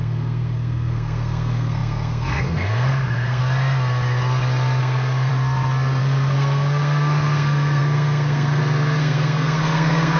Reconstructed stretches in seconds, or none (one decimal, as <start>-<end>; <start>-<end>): 0.0-3.4; 4.8-5.3; 6.0-10.2